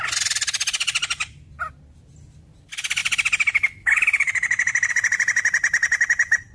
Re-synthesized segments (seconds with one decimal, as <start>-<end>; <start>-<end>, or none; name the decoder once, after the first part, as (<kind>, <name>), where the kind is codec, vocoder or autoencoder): none